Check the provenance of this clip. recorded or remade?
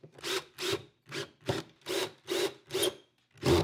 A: recorded